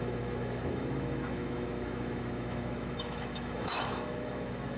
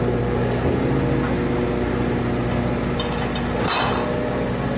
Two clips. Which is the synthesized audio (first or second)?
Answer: first